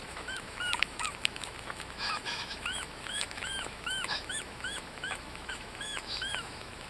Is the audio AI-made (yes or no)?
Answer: yes